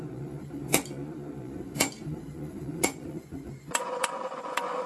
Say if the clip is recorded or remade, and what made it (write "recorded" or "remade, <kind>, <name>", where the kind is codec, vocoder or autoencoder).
remade, vocoder, Vocos